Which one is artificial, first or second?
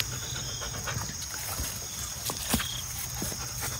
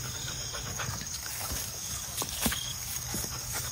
second